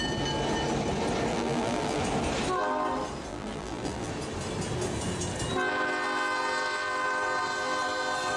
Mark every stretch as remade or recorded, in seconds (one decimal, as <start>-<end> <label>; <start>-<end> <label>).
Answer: 0.0-1.3 recorded; 1.3-2.0 remade; 2.0-3.3 recorded; 3.3-4.1 remade; 4.1-8.4 recorded